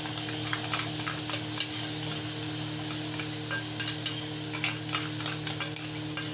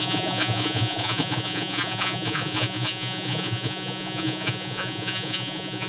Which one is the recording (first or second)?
first